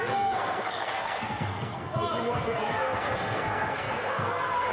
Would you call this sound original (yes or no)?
no